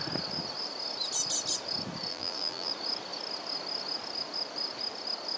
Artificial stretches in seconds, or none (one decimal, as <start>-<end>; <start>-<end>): 2.1-2.7